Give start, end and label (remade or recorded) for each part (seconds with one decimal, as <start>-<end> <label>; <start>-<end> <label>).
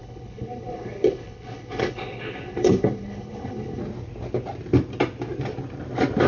0.0-3.8 remade; 3.8-6.3 recorded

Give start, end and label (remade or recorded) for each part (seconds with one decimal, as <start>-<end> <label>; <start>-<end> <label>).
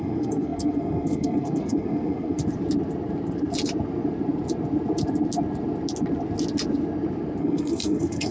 0.0-2.4 remade; 2.4-7.4 recorded; 7.4-8.3 remade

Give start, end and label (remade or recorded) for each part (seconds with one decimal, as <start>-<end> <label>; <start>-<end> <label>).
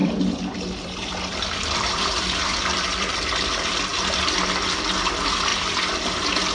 0.0-3.2 remade; 3.2-5.5 recorded; 5.5-6.1 remade; 6.1-6.5 recorded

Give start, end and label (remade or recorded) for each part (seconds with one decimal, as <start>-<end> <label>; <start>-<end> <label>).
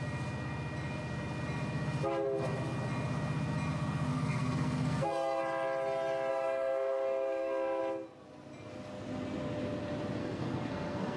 0.0-4.1 recorded; 4.1-5.4 remade; 5.4-6.3 recorded; 6.3-7.8 remade; 7.8-10.2 recorded; 10.2-11.2 remade